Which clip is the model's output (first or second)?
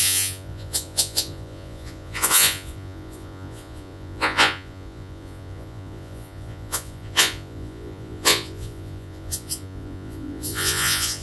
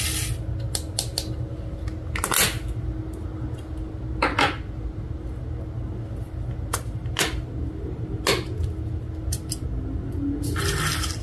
first